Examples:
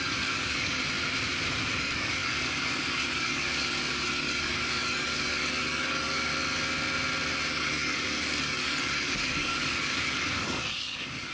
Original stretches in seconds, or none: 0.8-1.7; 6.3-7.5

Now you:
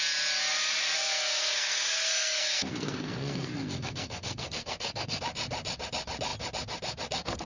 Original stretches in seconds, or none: 0.0-1.0; 5.2-7.5

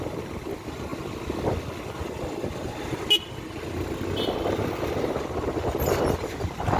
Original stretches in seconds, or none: 0.0-6.8

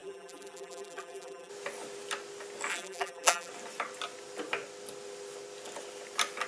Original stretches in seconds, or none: 1.5-2.7; 3.5-6.5

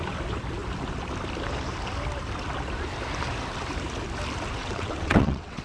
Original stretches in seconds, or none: 0.0-4.6

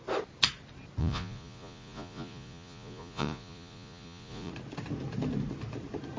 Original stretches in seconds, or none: 0.0-1.0; 4.5-6.2

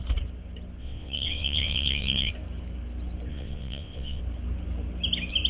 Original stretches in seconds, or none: 0.0-0.8; 2.3-3.3; 4.2-5.5

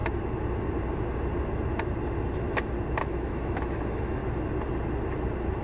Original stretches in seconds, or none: 0.0-3.0; 4.2-5.6